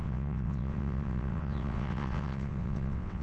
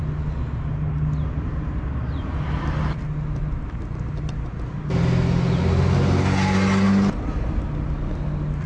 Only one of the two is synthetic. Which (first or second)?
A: first